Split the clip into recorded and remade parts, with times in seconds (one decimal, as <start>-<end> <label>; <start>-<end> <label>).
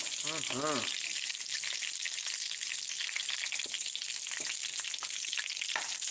0.0-6.1 recorded